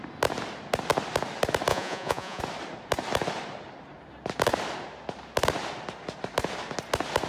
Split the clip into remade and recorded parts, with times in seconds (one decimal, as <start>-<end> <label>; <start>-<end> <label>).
0.0-1.7 recorded; 1.7-2.4 remade; 2.4-7.3 recorded